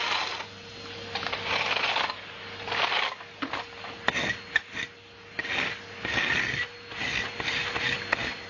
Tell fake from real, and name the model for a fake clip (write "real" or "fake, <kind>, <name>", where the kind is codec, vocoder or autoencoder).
real